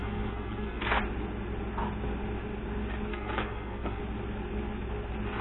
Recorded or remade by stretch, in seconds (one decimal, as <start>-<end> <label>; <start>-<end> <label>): 0.0-1.0 remade; 1.0-3.1 recorded; 3.1-4.0 remade; 4.0-5.4 recorded

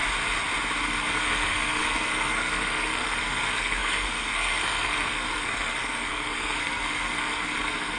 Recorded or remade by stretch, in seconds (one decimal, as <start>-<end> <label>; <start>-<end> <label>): 0.0-0.8 recorded; 0.8-8.0 remade

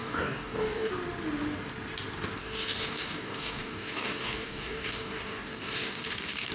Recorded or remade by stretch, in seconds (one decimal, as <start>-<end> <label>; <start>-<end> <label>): 0.0-0.9 remade; 0.9-2.4 recorded; 2.4-6.5 remade